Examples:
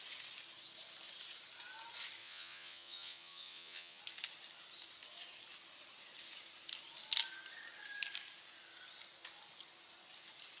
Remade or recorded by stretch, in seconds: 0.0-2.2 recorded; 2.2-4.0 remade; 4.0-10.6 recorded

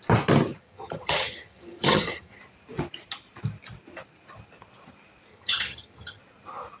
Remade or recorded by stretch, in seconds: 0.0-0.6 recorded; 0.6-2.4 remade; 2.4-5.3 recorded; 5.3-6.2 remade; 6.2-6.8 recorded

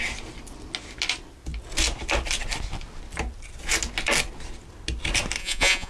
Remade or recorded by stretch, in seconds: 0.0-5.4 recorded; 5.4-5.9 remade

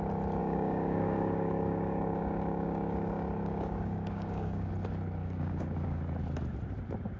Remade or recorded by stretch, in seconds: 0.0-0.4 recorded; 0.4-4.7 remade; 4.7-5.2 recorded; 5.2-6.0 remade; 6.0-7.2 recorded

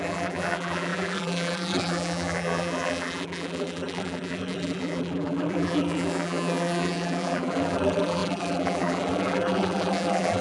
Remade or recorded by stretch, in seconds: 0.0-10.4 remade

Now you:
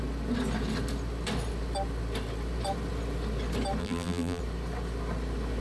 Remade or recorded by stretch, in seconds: 0.0-3.8 recorded; 3.8-4.4 remade; 4.4-5.6 recorded

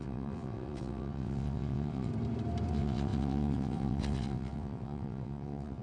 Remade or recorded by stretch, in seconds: 0.0-2.1 remade; 2.1-2.7 recorded; 2.7-5.8 remade

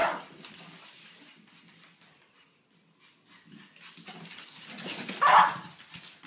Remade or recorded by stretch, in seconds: 0.0-6.3 recorded